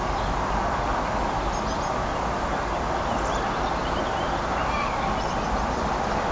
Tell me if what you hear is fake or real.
real